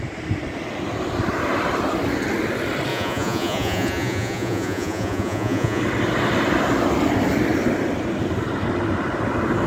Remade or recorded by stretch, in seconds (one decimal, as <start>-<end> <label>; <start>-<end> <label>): 0.0-2.9 recorded; 2.9-5.8 remade; 5.8-9.7 recorded